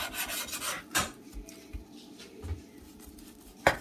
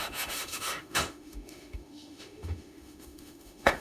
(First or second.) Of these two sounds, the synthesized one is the second